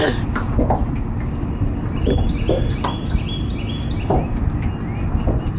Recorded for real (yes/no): yes